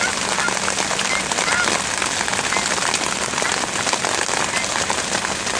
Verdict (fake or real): real